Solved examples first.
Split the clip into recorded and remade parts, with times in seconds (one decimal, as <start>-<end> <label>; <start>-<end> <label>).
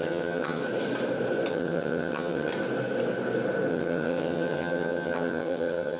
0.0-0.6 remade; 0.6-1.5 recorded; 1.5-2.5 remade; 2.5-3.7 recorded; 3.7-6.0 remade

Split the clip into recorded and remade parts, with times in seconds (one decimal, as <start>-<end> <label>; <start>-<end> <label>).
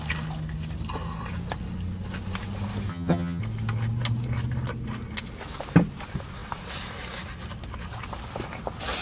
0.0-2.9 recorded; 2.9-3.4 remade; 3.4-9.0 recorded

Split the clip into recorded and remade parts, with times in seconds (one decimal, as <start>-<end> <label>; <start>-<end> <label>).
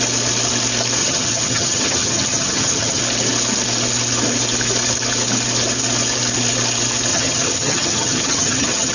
0.0-1.0 recorded; 1.0-3.0 remade; 3.0-7.1 recorded; 7.1-8.9 remade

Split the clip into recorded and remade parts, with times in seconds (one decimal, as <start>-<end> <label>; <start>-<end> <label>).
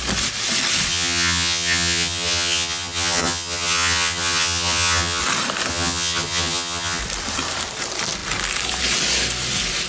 0.0-0.9 recorded; 0.9-5.2 remade; 5.2-5.7 recorded; 5.7-7.0 remade; 7.0-9.9 recorded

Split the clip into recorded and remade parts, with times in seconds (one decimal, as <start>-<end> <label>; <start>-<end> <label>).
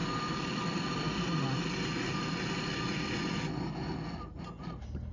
0.0-5.1 recorded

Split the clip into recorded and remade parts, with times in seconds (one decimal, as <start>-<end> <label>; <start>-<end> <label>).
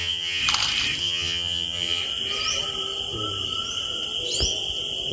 0.0-0.4 remade; 0.4-1.0 recorded; 1.0-2.0 remade; 2.0-5.1 recorded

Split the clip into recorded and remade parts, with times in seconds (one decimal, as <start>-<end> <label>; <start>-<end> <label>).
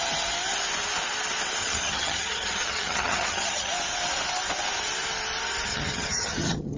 0.0-1.6 recorded; 1.6-3.7 remade; 3.7-5.7 recorded; 5.7-6.8 remade